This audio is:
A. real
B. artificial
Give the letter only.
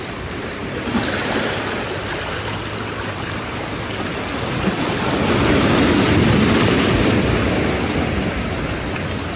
B